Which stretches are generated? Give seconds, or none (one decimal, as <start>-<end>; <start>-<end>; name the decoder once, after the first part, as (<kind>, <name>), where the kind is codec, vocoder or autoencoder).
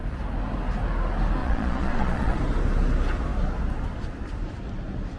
1.4-2.4 (vocoder, Vocos)